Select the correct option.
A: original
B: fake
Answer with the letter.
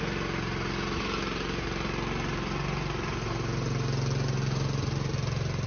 A